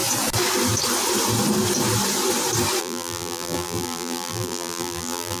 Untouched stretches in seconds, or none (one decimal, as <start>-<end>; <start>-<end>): 0.0-2.8